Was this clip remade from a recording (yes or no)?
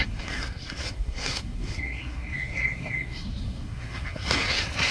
yes